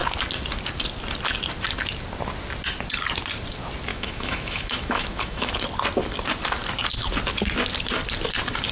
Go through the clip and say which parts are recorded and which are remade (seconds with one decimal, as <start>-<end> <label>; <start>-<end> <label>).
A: 0.0-3.9 recorded; 3.9-5.5 remade; 5.5-8.7 recorded